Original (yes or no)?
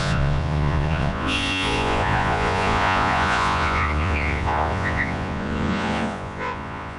no